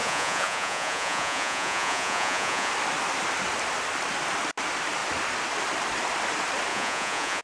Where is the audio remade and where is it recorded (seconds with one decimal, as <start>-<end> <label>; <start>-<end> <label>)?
0.0-2.7 remade; 2.7-6.7 recorded; 6.7-7.4 remade